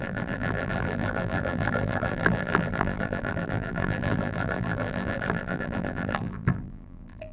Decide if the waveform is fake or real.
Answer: fake